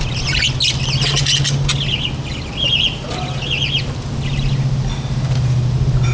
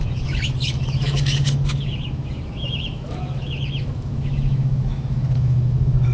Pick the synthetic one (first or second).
second